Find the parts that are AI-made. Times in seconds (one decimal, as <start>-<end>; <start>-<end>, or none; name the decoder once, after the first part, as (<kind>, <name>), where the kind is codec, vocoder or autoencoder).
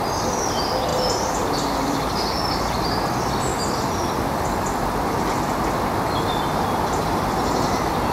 0.9-2.3 (vocoder, BigVGAN v2); 6.5-7.2